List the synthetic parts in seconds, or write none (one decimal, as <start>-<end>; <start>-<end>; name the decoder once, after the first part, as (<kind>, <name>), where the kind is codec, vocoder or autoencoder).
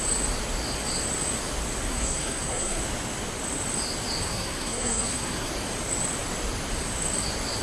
1.9-2.8 (codec, SNAC); 4.2-5.5